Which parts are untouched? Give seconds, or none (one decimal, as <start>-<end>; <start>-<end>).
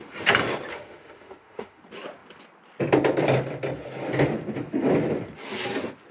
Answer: 0.0-0.7; 1.8-6.1